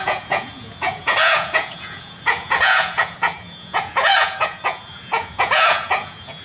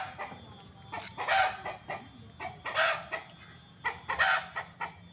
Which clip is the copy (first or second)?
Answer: first